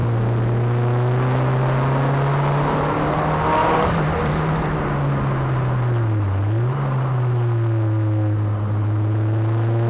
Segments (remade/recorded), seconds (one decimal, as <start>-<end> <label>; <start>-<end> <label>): 0.0-3.6 recorded; 3.6-4.9 remade; 4.9-9.9 recorded